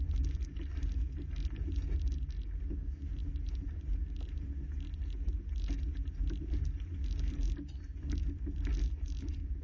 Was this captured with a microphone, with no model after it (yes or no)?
yes